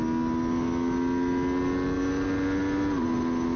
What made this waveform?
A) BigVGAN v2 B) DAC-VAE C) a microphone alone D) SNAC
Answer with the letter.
C